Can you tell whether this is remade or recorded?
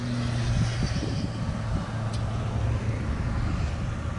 recorded